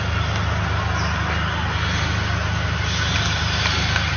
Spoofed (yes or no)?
no